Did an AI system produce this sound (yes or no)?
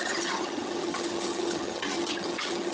yes